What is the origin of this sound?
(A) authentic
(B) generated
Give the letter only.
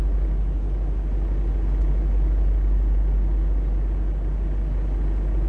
A